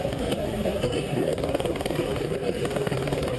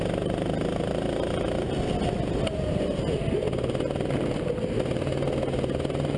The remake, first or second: first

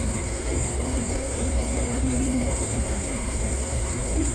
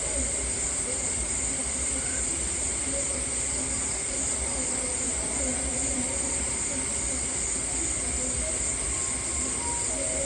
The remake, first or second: first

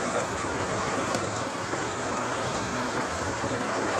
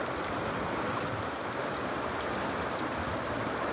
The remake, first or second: first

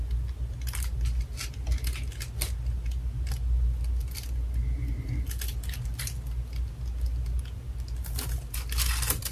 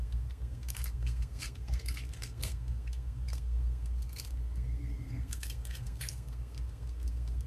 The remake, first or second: second